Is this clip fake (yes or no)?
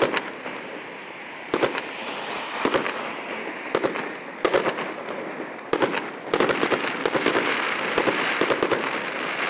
no